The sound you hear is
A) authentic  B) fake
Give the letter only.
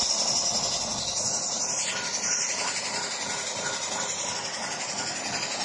A